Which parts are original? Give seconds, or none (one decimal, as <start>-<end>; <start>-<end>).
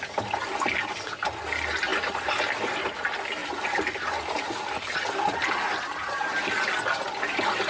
0.0-7.7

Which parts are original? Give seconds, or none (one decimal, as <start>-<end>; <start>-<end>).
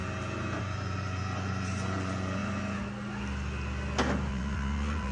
0.0-0.6; 2.4-4.3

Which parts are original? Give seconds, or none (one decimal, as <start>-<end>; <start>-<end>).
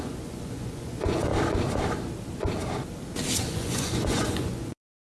1.3-3.5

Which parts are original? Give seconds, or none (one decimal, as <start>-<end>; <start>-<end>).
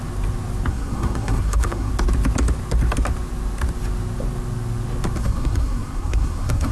0.0-0.7; 1.9-5.2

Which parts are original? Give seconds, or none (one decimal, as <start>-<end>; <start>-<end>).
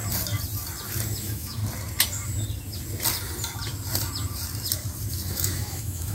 0.0-1.2; 1.6-5.3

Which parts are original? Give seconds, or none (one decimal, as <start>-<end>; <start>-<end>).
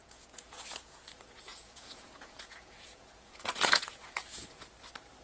1.0-1.5; 4.6-5.2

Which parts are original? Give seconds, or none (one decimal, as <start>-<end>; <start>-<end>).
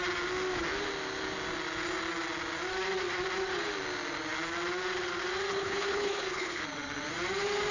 0.0-5.5; 6.6-7.7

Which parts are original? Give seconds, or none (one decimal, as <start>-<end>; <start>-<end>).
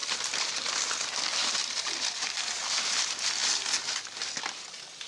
0.7-1.6; 2.3-5.1